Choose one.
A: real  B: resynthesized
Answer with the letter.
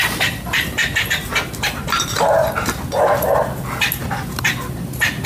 A